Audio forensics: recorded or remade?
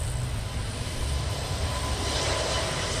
recorded